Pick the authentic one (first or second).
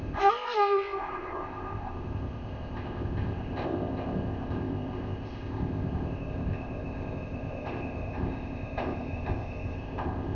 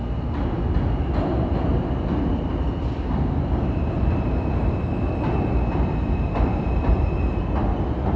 second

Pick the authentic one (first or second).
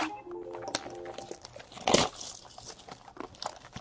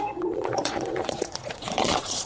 first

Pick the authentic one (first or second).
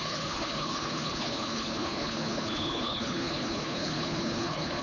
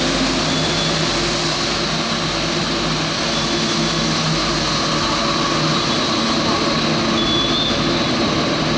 second